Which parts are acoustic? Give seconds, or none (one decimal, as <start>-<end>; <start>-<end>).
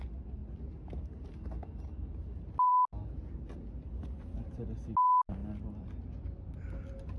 0.0-7.2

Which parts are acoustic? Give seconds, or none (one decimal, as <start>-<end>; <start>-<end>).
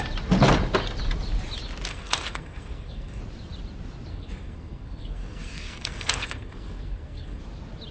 0.0-1.9; 3.2-4.1; 7.4-7.9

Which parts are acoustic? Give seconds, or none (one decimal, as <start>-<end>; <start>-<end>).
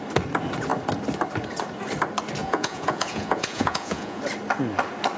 0.0-2.4; 4.2-5.2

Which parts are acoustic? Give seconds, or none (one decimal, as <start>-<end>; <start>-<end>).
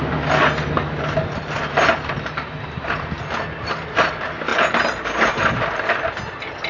0.0-1.6; 3.3-4.5; 5.8-6.7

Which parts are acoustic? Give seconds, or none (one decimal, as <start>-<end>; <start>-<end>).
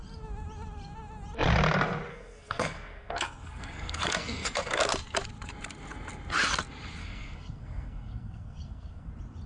0.0-2.1; 4.8-7.0; 9.1-9.5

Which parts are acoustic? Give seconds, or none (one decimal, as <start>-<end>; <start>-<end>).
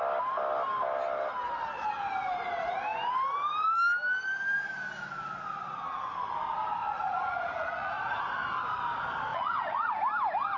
0.0-6.8; 8.2-9.3; 9.9-10.6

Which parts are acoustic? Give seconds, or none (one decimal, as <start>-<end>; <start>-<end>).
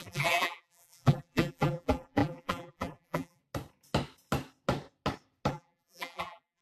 3.4-5.5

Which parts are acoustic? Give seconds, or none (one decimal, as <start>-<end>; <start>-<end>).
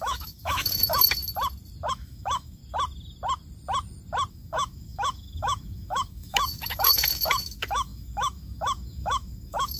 1.2-1.9; 2.6-4.3